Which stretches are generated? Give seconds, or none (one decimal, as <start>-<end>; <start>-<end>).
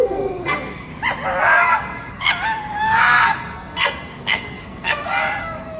0.0-0.9; 1.4-2.3; 2.8-5.8